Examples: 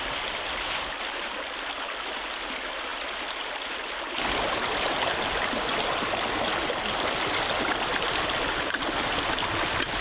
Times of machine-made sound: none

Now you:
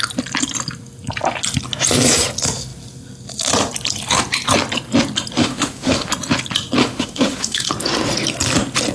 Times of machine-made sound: 5.4-6.1 (autoencoder, DAC-VAE); 6.8-7.7

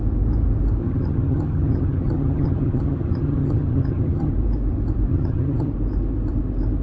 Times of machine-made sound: 0.8-4.3 (vocoder, HiFi-GAN); 5.1-5.7

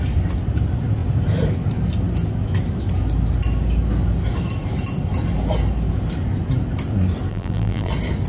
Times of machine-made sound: 7.3-7.9 (vocoder, BigVGAN v2)

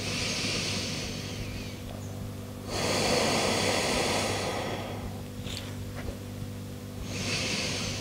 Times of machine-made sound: none